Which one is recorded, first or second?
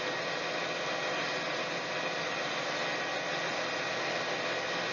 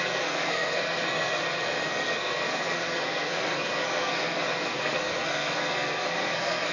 first